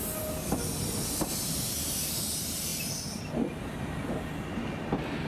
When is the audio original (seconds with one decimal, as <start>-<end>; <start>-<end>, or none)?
0.0-5.3